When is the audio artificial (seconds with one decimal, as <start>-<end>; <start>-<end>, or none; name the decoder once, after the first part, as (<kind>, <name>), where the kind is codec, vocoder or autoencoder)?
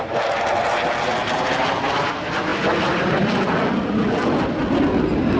none